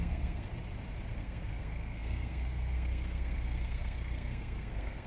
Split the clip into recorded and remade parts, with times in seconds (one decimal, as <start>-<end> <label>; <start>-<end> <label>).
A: 0.0-0.5 remade; 0.5-1.2 recorded; 1.2-5.1 remade